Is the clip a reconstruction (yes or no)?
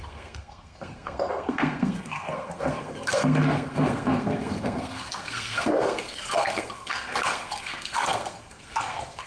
yes